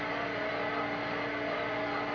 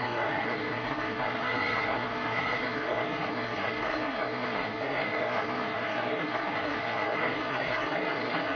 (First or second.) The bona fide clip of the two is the first